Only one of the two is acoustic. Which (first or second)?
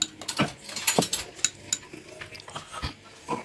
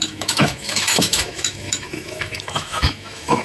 first